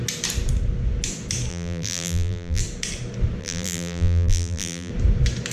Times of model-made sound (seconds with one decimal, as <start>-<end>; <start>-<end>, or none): 1.5-2.6; 3.4-4.9